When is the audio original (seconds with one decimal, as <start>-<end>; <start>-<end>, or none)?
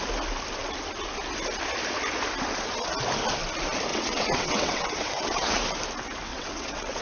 0.0-3.9; 5.6-6.3